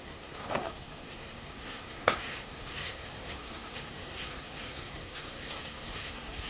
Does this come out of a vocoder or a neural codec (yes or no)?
yes